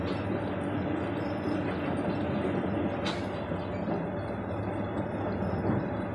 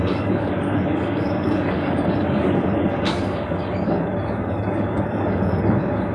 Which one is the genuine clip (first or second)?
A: first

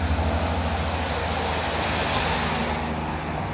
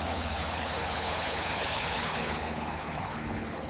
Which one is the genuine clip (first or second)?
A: first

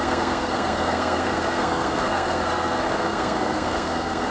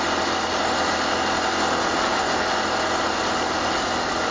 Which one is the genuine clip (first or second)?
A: second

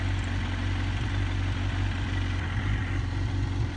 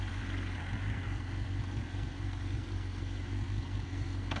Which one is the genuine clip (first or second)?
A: first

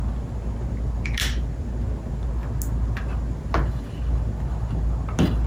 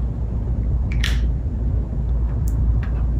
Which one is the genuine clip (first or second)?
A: first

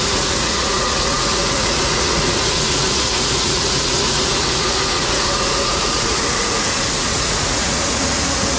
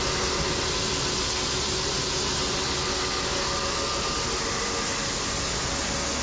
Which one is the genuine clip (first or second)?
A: second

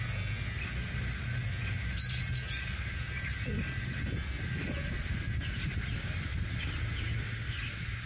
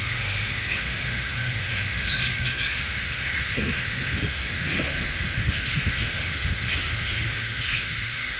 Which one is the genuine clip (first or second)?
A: first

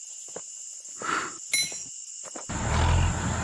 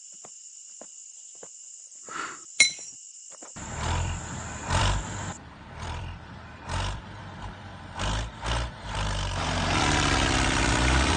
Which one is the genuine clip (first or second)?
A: first